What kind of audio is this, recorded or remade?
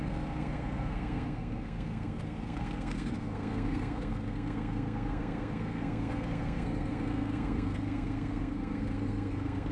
remade